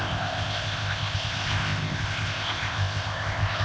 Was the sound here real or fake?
fake